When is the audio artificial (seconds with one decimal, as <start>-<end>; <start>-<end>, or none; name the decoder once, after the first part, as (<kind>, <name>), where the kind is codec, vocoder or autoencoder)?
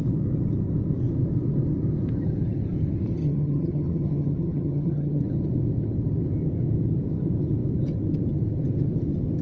3.2-5.2 (vocoder, HiFi-GAN)